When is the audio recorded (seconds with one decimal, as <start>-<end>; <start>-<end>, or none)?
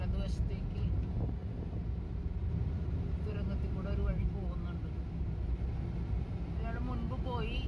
0.0-7.7